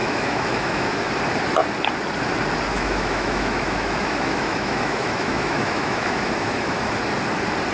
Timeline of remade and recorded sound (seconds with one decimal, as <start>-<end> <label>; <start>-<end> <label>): 0.0-1.1 remade; 1.1-2.7 recorded; 2.7-6.9 remade; 6.9-7.7 recorded